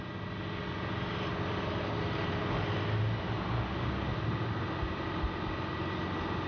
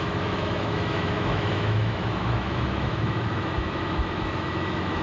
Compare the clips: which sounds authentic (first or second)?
first